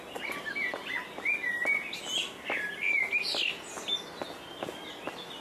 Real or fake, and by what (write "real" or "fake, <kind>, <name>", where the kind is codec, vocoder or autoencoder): real